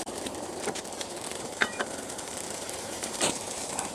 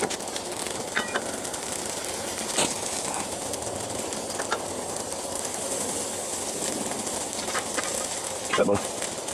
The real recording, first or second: second